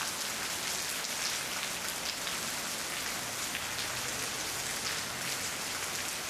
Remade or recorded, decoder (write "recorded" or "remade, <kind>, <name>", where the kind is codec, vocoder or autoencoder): recorded